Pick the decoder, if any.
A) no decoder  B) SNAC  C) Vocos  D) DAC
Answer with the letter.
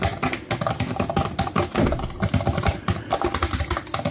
A